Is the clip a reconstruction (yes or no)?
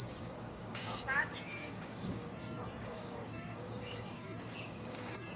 yes